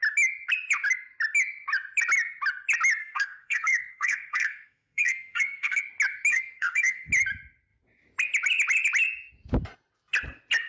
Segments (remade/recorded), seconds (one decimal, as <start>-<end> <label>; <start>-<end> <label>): 0.0-3.0 recorded; 3.0-5.8 remade; 5.8-6.3 recorded; 6.3-7.1 remade; 7.1-10.7 recorded